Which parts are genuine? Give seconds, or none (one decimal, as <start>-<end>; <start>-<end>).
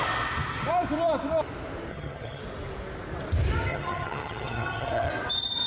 0.0-1.9; 2.4-3.7; 5.1-5.7